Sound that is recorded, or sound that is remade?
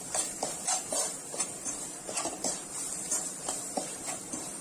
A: remade